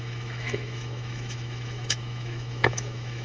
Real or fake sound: fake